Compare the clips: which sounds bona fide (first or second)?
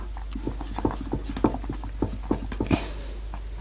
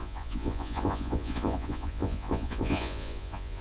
first